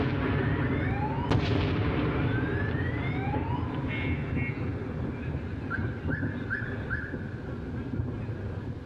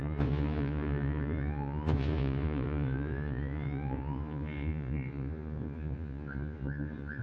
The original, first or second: first